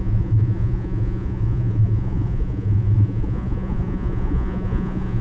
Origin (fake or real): fake